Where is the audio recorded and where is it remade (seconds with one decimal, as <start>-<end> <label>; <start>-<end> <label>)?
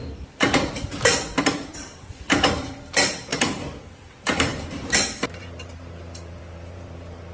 0.0-7.3 remade